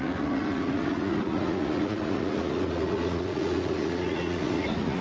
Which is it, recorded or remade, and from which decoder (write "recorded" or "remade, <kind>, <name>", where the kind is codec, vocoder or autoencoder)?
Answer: remade, vocoder, Vocos